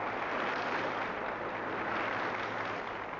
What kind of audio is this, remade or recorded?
recorded